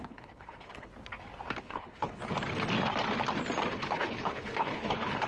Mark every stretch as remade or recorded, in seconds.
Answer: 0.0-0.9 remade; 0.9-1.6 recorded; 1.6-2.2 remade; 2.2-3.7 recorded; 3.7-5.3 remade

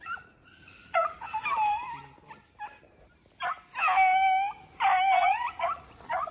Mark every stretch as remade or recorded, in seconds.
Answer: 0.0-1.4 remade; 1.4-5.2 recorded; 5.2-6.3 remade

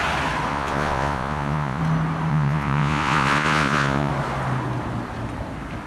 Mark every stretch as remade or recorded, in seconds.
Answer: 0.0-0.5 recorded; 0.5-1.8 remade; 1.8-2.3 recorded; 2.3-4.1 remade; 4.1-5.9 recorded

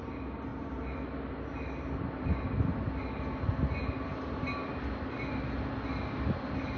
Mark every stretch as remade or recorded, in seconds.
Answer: 0.0-6.8 recorded

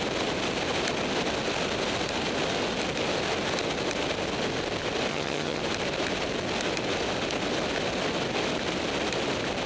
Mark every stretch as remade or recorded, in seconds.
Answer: 0.0-5.1 recorded; 5.1-5.6 remade; 5.6-9.7 recorded

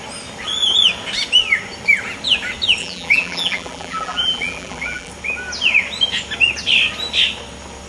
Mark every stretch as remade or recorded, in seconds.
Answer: 0.0-2.8 recorded; 2.8-5.1 remade; 5.1-7.9 recorded